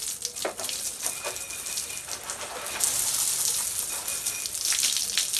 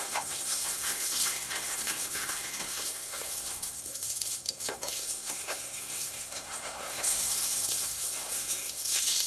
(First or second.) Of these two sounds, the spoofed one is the second